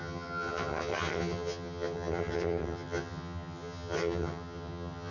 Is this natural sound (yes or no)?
no